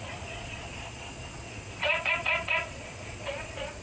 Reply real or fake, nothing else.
fake